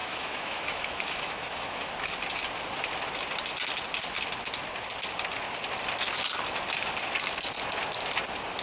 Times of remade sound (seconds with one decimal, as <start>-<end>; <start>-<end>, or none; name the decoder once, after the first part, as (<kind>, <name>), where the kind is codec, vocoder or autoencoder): 0.0-1.9 (autoencoder, DAC-VAE)